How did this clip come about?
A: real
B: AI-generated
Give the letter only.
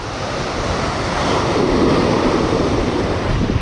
B